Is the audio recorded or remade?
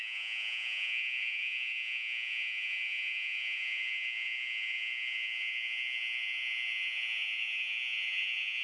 remade